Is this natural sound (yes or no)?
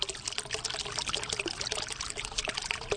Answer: yes